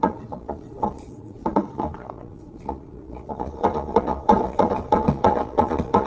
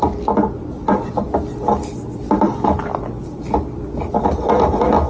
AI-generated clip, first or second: first